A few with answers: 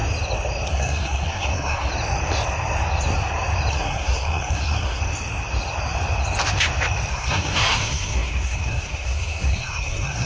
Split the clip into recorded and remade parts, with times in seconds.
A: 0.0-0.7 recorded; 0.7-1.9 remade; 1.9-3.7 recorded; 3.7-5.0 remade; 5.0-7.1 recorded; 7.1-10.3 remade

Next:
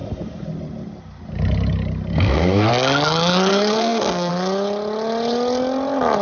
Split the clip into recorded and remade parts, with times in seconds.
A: 0.0-2.1 recorded; 2.1-2.7 remade; 2.7-3.5 recorded; 3.5-4.3 remade; 4.3-6.2 recorded